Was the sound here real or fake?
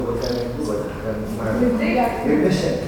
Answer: real